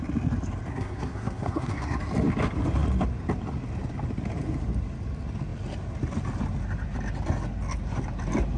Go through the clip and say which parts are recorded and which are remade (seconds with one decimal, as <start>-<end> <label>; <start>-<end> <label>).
0.0-0.7 recorded; 0.7-2.0 remade; 2.0-8.6 recorded